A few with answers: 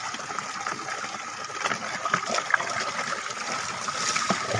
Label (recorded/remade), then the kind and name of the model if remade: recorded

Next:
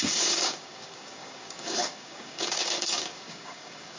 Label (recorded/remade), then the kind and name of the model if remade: remade, codec, DAC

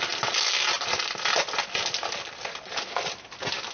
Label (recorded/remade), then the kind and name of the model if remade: recorded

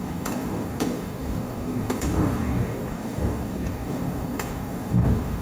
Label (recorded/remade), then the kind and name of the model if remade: remade, codec, DAC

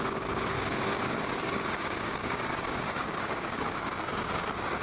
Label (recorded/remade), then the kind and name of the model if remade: remade, codec, DAC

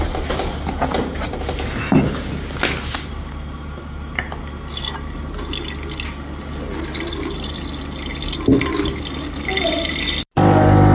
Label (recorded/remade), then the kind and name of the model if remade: recorded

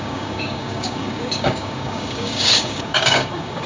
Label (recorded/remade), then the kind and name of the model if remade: remade, codec, DAC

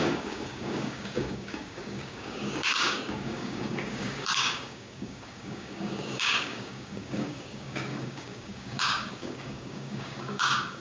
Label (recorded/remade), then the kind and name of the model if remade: remade, codec, DAC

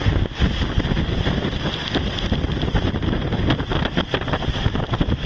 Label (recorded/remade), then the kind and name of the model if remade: recorded